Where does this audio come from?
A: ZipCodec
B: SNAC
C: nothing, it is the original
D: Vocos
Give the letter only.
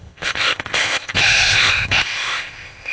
A